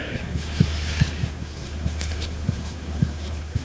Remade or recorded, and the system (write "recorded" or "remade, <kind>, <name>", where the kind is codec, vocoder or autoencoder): remade, codec, SNAC